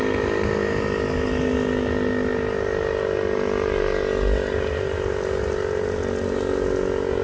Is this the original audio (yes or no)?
yes